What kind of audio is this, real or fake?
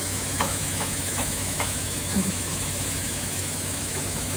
fake